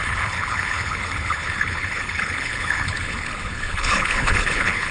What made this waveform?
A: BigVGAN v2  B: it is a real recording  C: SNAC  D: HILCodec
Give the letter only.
D